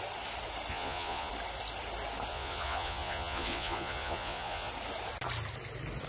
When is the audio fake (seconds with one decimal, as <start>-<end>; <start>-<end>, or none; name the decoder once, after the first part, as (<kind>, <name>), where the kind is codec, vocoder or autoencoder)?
0.7-1.3 (vocoder, Vocos); 2.3-4.7